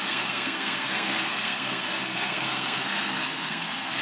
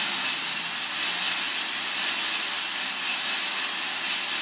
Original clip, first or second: second